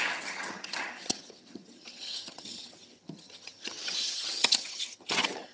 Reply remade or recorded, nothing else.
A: remade